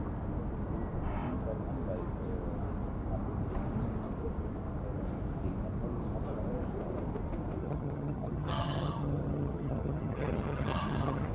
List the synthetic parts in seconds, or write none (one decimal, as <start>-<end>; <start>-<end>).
7.6-11.3